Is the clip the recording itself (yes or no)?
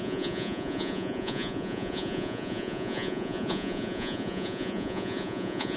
no